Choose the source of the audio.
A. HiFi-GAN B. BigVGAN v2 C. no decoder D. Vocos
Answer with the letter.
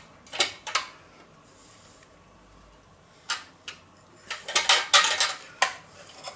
C